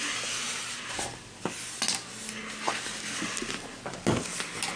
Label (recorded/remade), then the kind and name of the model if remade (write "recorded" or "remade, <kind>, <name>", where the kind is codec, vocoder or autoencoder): recorded